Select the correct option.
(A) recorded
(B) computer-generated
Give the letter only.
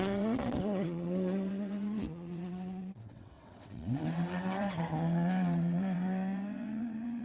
B